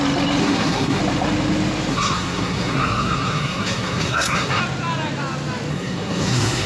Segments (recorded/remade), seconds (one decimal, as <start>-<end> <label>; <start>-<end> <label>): 0.0-0.4 recorded; 0.4-1.0 remade; 1.0-1.9 recorded; 1.9-4.6 remade; 4.6-5.7 recorded; 5.7-6.7 remade